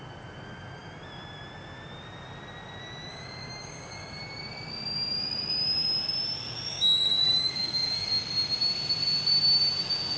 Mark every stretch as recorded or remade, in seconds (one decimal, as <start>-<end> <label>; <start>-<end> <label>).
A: 0.0-3.1 recorded; 3.1-4.2 remade; 4.2-6.7 recorded; 6.7-8.1 remade; 8.1-10.2 recorded

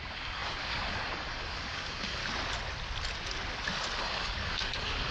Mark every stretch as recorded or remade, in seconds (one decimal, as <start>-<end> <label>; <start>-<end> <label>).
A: 0.0-2.2 remade; 2.2-4.0 recorded; 4.0-5.1 remade

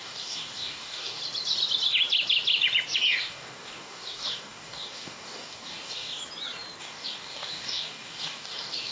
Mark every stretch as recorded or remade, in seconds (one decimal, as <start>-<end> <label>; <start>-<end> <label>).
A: 0.0-1.2 remade; 1.2-3.2 recorded; 3.2-6.2 remade; 6.2-6.8 recorded; 6.8-8.9 remade